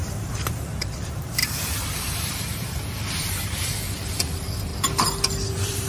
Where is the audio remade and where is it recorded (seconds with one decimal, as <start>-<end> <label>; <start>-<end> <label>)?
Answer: 0.0-0.5 recorded; 0.5-4.7 remade; 4.7-5.5 recorded; 5.5-5.9 remade

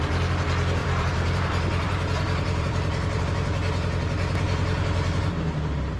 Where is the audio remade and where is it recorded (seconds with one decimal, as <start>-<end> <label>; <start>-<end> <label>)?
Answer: 0.0-0.8 recorded; 0.8-3.2 remade; 3.2-6.0 recorded

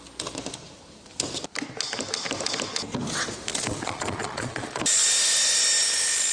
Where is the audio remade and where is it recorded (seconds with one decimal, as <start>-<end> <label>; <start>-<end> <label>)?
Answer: 0.0-3.5 recorded; 3.5-4.8 remade; 4.8-6.3 recorded

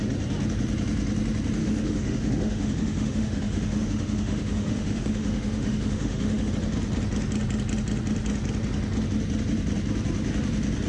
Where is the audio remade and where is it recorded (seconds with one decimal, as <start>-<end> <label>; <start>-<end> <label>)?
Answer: 0.0-1.6 recorded; 1.6-6.5 remade; 6.5-10.9 recorded